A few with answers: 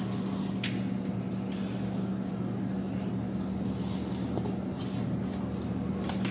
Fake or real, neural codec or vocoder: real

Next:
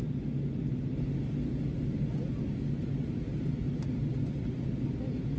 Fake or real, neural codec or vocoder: real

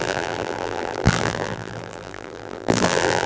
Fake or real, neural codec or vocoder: fake, vocoder, BigVGAN v2